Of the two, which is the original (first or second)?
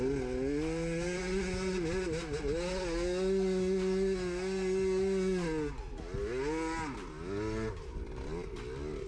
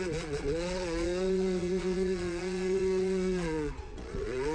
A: first